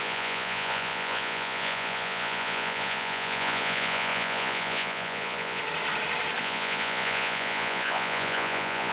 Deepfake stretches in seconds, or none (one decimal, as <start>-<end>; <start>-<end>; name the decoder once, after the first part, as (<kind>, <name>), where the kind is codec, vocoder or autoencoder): 0.0-5.6 (vocoder, Vocos); 6.4-8.9

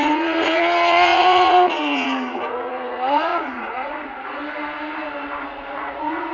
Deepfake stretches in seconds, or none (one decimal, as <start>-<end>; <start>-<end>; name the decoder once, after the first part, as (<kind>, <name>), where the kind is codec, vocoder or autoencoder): 0.0-4.4 (vocoder, Vocos); 5.4-6.3

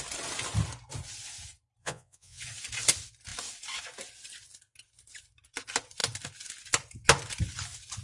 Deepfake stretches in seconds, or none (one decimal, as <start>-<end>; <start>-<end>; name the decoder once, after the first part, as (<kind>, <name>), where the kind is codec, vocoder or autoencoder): 1.8-2.4 (vocoder, Vocos)

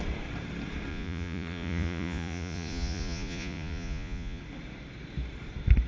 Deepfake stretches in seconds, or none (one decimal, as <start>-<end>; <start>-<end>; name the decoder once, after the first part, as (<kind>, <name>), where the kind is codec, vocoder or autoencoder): 0.9-4.4 (vocoder, Vocos)

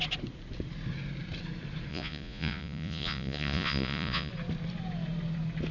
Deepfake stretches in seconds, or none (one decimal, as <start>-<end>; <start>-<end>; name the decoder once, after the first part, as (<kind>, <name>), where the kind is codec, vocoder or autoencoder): 1.9-4.3 (vocoder, Vocos)

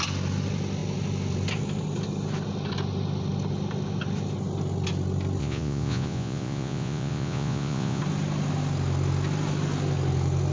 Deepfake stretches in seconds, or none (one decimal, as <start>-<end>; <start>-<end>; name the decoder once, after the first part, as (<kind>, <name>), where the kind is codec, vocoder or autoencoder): 5.4-8.0 (vocoder, Vocos)

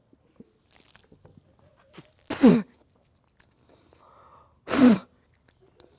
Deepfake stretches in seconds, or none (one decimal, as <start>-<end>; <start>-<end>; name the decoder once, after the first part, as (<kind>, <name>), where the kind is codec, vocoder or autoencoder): none

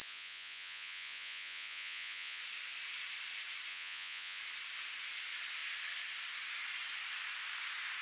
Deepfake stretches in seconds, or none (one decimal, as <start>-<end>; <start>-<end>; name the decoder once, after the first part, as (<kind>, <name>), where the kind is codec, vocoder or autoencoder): 0.0-2.4 (vocoder, Vocos); 3.7-4.4